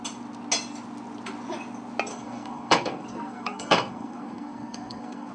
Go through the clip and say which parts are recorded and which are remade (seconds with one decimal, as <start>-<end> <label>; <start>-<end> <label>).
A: 0.0-2.1 recorded; 2.1-5.3 remade

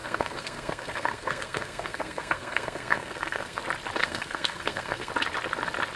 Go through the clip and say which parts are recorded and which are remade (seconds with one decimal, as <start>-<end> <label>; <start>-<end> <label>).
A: 0.0-3.6 remade; 3.6-4.0 recorded; 4.0-5.1 remade; 5.1-6.0 recorded

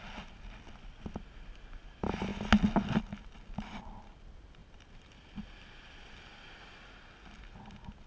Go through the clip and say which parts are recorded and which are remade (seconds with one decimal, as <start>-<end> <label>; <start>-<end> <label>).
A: 0.0-8.1 recorded

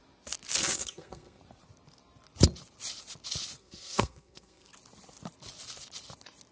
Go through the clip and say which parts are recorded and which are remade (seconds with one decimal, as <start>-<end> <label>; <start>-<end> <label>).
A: 0.0-0.6 recorded; 0.6-1.4 remade; 1.4-3.6 recorded; 3.6-4.7 remade; 4.7-6.5 recorded

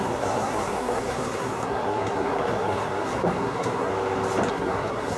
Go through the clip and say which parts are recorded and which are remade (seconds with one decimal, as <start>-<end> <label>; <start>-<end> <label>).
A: 0.0-3.9 remade; 3.9-4.5 recorded; 4.5-5.2 remade

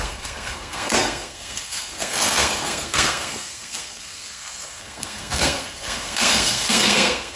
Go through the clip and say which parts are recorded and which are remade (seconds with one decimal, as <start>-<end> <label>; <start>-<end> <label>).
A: 0.0-7.4 remade

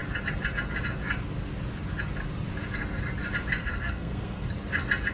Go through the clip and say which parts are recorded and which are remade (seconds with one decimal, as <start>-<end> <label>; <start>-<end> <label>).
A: 0.0-3.6 recorded; 3.6-4.5 remade; 4.5-5.1 recorded